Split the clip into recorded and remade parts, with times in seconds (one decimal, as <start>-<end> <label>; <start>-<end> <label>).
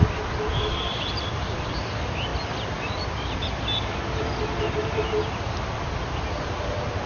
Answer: 0.0-7.1 recorded